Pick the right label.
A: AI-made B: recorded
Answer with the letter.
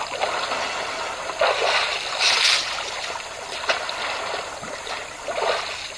B